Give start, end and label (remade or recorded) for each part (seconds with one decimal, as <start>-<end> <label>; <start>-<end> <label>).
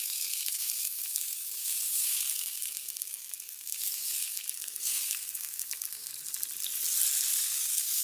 0.0-6.1 remade; 6.1-7.4 recorded; 7.4-8.0 remade